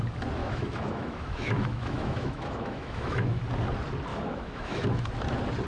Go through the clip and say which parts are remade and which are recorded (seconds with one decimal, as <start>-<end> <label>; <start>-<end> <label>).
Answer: 0.0-0.4 recorded; 0.4-3.4 remade; 3.4-4.1 recorded; 4.1-5.0 remade; 5.0-5.7 recorded